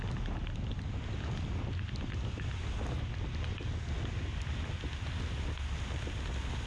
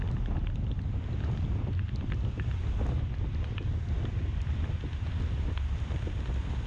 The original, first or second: first